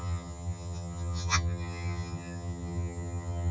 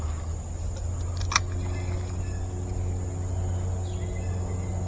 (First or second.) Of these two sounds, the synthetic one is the first